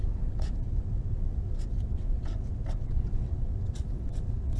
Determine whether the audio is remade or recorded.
remade